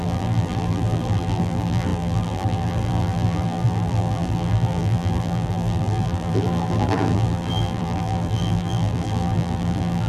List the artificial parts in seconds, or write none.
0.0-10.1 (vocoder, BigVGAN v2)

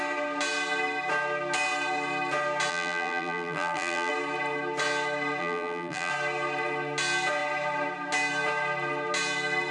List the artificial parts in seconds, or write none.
2.7-4.1 (vocoder, BigVGAN v2); 5.4-6.1

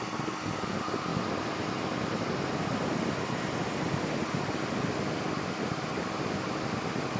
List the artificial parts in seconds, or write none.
none